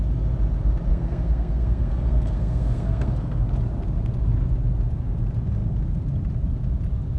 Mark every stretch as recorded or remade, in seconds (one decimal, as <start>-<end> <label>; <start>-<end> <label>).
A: 0.0-0.9 recorded; 0.9-3.5 remade; 3.5-7.2 recorded